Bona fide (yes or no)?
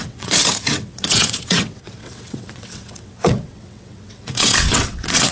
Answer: no